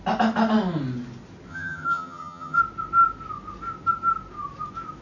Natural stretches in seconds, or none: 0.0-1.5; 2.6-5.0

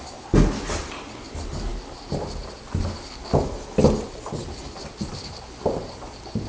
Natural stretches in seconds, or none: 0.0-6.5

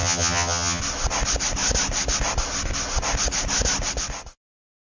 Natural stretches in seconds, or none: 0.8-5.0

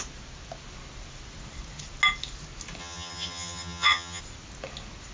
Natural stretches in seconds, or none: 0.0-2.8; 4.2-5.1

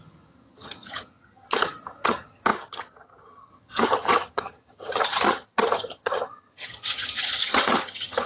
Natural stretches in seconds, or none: none